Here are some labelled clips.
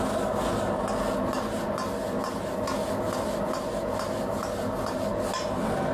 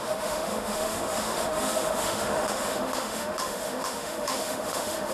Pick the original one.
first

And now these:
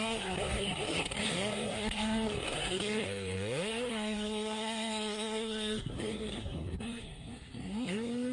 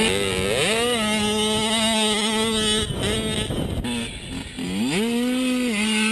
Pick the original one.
second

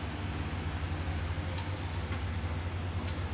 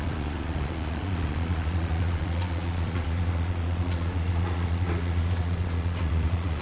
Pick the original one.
first